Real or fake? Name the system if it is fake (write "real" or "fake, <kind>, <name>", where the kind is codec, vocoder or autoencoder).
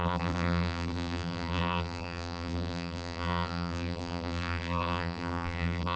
fake, vocoder, BigVGAN v2